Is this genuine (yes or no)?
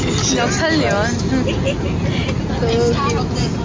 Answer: yes